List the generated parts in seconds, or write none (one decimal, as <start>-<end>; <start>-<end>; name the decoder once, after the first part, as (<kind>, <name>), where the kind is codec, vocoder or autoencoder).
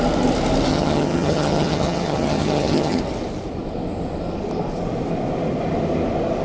0.7-3.0 (vocoder, HiFi-GAN)